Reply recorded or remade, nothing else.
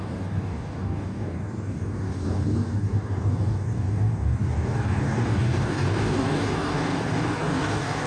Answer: remade